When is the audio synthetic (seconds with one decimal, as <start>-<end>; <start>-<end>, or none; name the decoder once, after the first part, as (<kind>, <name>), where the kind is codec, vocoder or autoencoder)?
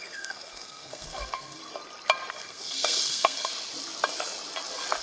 0.0-1.6 (codec, SNAC); 2.3-3.5